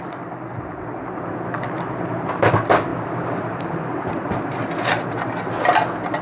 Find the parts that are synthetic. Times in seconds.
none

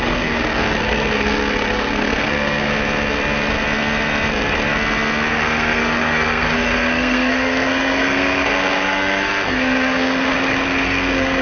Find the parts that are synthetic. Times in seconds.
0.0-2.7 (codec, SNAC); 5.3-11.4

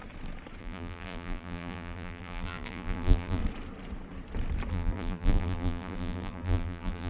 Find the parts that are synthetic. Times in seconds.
0.6-3.4 (vocoder, BigVGAN v2); 4.7-7.1

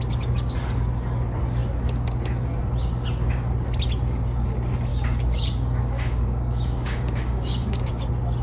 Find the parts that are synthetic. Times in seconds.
4.9-7.9 (codec, DAC)

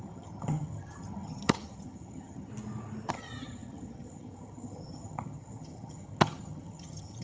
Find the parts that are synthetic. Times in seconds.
0.0-2.5 (vocoder, HiFi-GAN); 3.1-7.2